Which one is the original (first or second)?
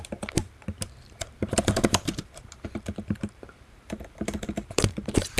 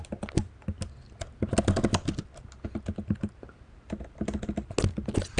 second